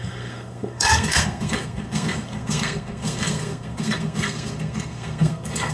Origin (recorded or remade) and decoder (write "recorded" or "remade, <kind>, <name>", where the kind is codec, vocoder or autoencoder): remade, codec, SNAC